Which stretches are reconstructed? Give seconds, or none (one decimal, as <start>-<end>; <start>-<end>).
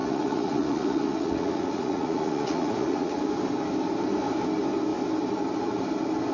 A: 0.0-3.2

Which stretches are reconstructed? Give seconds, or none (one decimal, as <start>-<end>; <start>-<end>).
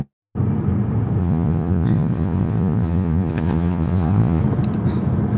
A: 1.2-4.4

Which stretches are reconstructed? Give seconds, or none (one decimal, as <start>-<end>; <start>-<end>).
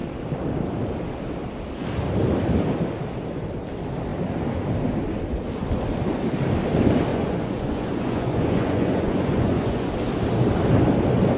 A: 7.1-9.9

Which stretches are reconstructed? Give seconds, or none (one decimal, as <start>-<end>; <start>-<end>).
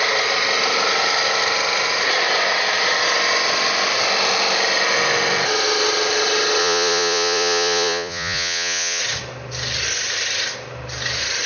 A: 6.6-9.0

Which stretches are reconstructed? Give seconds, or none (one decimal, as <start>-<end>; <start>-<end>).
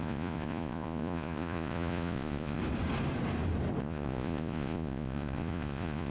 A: 0.0-2.6; 3.8-6.1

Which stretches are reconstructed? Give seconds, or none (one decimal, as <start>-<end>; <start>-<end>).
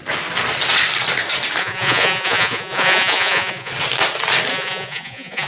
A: 1.6-3.7; 4.5-5.5